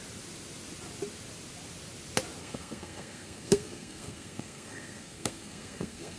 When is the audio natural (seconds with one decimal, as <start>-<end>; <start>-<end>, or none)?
0.0-2.4